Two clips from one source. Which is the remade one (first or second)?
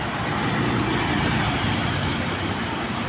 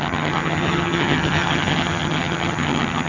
second